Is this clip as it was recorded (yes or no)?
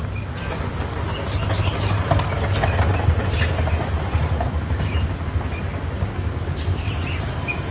yes